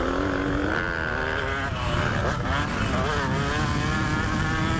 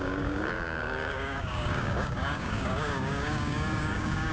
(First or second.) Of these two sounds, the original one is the first